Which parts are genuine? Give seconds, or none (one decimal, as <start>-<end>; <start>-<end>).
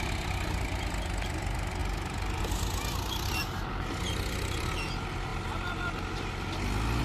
0.0-7.0